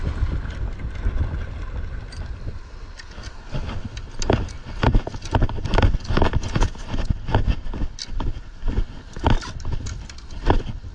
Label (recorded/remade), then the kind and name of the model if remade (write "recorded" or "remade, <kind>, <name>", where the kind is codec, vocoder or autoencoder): recorded